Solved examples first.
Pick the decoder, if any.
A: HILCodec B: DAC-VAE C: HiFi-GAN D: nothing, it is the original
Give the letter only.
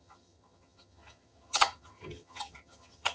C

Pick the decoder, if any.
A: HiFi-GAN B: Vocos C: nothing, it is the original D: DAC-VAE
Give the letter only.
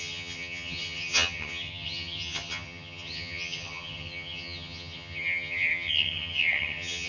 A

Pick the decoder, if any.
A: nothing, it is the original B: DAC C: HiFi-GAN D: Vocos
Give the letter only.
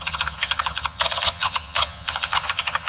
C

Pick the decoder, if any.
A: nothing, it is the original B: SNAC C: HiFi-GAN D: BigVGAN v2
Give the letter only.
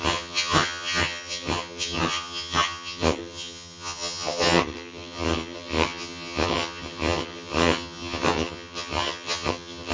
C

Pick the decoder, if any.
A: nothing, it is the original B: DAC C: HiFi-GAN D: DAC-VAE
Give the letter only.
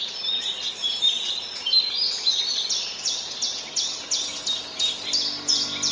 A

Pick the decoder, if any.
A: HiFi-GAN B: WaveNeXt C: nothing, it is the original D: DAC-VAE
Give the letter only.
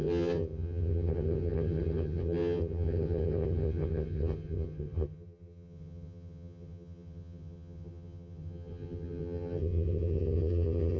A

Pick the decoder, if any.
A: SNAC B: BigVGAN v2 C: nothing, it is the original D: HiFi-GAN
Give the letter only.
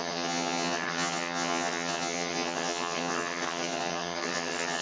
D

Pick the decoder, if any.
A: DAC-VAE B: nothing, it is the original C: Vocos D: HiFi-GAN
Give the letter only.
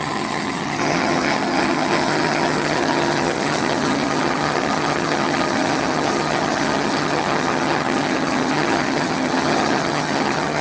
D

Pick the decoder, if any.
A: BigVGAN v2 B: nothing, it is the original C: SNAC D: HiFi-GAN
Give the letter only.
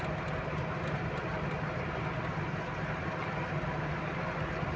B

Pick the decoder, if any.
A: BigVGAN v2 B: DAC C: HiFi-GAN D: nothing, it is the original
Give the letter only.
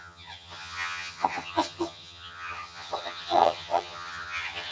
C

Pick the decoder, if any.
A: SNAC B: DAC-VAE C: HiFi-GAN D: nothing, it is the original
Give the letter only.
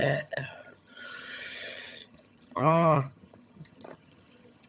C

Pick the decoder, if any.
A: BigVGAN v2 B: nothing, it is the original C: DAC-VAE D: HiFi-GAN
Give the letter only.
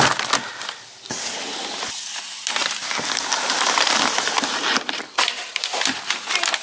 B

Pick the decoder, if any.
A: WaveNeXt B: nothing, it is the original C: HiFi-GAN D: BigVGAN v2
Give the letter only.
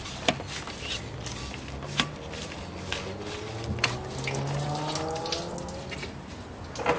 B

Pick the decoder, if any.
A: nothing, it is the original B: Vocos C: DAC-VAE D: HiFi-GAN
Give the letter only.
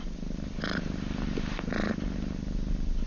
A